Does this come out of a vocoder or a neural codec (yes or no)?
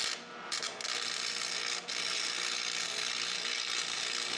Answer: no